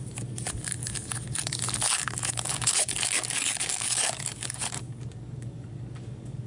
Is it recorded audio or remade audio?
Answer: remade